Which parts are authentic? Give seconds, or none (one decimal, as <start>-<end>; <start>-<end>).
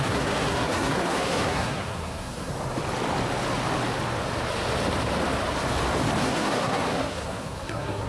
2.5-6.2